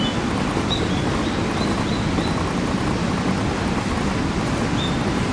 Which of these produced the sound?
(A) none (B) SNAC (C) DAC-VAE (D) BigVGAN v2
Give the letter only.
A